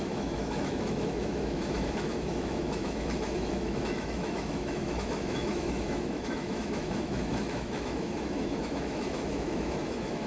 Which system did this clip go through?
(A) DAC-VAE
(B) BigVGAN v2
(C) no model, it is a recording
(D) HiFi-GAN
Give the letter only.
A